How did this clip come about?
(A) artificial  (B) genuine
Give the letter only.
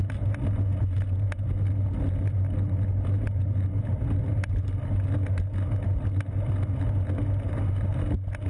B